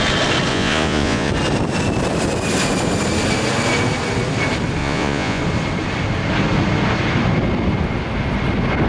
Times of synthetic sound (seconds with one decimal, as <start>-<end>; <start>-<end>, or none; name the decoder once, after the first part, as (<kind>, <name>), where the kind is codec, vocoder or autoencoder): 0.5-1.3 (vocoder, Vocos); 4.8-5.4